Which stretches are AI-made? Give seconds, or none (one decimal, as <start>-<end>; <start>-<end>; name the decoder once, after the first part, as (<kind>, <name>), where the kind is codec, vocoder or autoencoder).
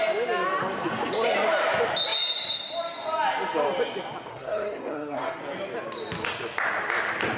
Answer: 4.3-5.4 (codec, SNAC)